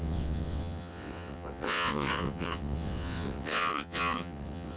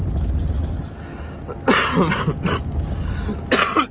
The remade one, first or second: first